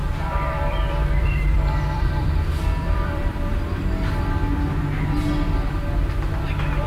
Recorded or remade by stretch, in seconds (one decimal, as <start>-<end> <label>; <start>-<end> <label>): 0.0-3.8 remade; 3.8-6.9 recorded